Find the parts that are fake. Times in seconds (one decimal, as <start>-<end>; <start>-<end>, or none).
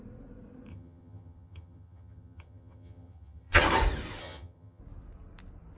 0.7-3.6; 4.2-4.8